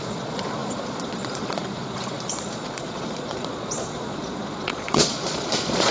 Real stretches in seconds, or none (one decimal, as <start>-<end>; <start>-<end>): none